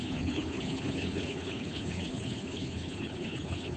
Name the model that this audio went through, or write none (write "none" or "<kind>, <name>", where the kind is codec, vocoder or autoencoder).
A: codec, HILCodec